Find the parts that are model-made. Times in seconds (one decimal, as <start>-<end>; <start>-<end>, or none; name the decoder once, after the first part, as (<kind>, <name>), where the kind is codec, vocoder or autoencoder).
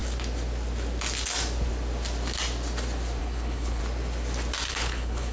3.2-3.8 (codec, HILCodec); 4.7-5.3